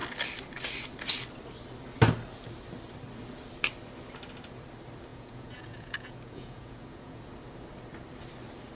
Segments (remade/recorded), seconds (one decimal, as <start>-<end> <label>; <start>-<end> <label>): 0.0-5.1 recorded; 5.1-7.2 remade; 7.2-8.7 recorded